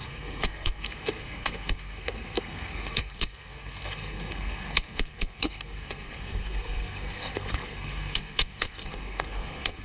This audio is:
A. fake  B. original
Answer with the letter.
A